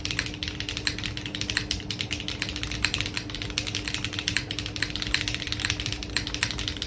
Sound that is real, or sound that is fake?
real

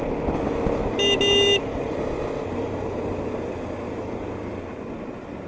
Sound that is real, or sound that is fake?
real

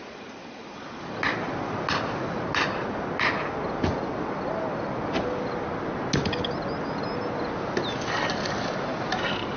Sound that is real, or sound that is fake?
real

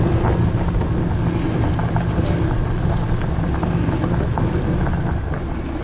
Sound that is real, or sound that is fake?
real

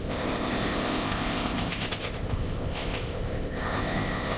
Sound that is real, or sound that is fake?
fake